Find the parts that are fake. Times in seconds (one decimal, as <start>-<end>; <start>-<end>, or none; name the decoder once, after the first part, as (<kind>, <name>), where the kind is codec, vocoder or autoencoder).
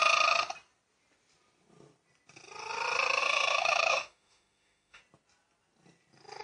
3.2-5.0 (autoencoder, DAC-VAE)